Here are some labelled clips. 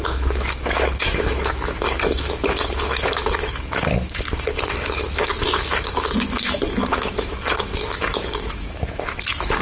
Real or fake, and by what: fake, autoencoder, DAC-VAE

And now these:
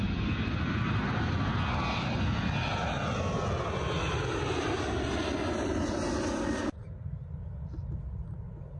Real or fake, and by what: real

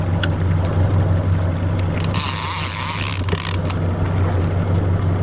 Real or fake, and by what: real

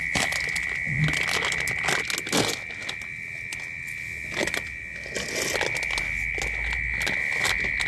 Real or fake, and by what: real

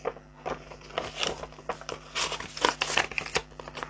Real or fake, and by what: real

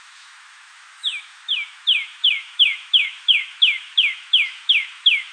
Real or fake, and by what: fake, autoencoder, DAC-VAE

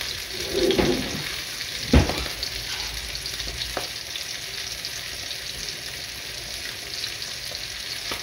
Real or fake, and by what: real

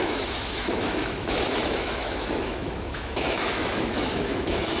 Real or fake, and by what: fake, autoencoder, DAC-VAE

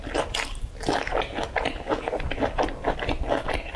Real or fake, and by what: real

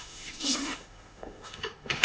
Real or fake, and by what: fake, autoencoder, DAC-VAE